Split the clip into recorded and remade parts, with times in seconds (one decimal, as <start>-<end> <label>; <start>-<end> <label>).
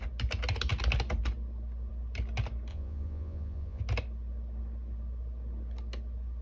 0.0-2.7 recorded; 2.7-3.8 remade; 3.8-6.4 recorded